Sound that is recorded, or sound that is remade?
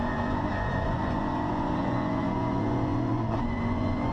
remade